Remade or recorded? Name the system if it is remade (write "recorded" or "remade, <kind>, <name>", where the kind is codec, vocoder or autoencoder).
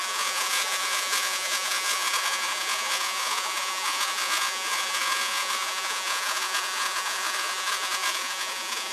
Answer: remade, vocoder, Vocos